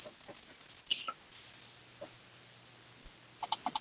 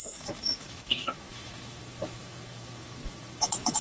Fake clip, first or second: second